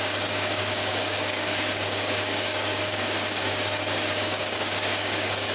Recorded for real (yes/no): no